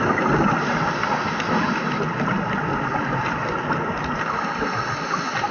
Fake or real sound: real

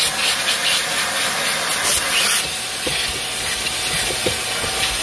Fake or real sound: real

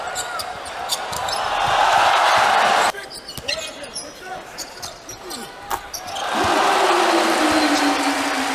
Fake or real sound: real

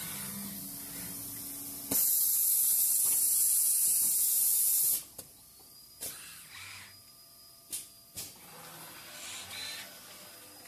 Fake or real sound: real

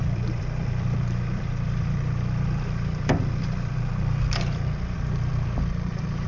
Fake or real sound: fake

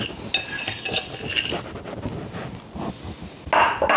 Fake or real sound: real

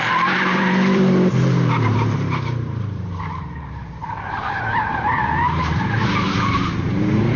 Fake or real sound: fake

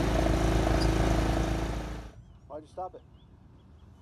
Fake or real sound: real